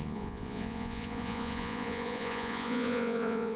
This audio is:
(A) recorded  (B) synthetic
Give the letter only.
B